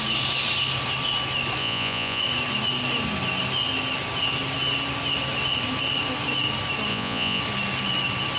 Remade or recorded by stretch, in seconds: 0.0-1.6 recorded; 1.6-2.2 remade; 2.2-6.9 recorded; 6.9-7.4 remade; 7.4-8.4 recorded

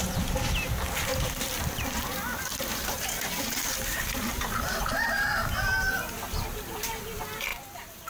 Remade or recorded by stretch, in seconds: 0.0-1.1 recorded; 1.1-4.9 remade; 4.9-7.5 recorded; 7.5-8.1 remade

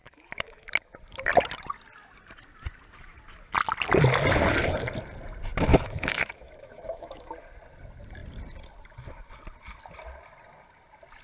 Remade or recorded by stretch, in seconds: 0.0-0.7 remade; 0.7-5.7 recorded; 5.7-7.3 remade; 7.3-11.2 recorded

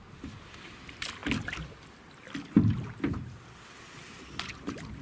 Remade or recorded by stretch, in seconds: 0.0-5.0 recorded

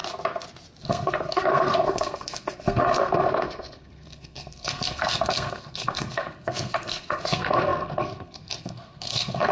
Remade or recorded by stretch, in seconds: 0.0-0.8 recorded; 0.8-9.5 remade

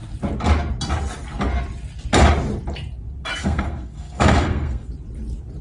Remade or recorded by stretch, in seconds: 0.0-3.4 recorded; 3.4-4.9 remade; 4.9-5.6 recorded

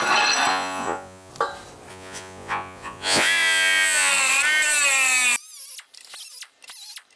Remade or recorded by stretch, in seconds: 0.0-0.5 recorded; 0.5-1.3 remade; 1.3-1.9 recorded; 1.9-4.1 remade; 4.1-7.2 recorded